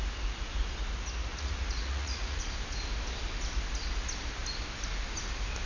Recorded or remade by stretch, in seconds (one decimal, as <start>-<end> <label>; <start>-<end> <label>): 0.0-1.3 recorded; 1.3-2.4 remade; 2.4-5.7 recorded